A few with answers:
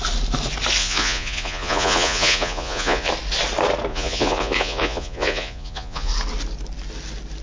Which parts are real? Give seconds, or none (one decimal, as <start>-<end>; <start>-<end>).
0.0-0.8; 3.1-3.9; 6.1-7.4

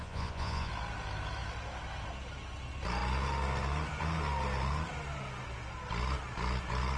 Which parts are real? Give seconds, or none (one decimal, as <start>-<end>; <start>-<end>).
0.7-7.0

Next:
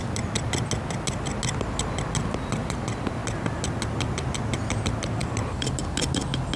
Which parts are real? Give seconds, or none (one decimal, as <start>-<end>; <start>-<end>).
0.0-6.6

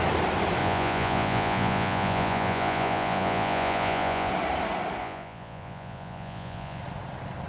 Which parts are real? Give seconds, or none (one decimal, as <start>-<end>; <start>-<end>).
0.0-0.6; 4.3-5.0; 6.8-7.5

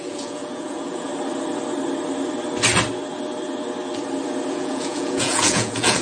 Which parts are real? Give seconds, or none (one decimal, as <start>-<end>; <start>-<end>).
1.1-4.5

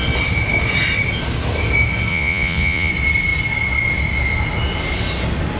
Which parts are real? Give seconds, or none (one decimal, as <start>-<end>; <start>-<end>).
0.0-2.1; 2.9-5.6